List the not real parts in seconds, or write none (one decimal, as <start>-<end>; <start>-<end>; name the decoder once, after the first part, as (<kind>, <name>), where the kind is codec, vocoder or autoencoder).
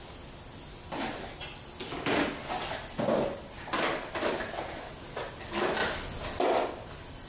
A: 1.4-4.8 (vocoder, BigVGAN v2)